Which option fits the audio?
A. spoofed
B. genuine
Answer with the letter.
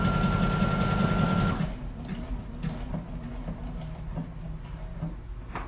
B